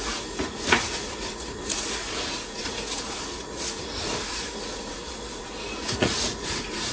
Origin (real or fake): fake